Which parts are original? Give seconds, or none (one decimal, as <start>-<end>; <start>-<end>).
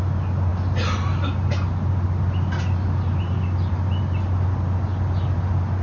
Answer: 0.0-5.8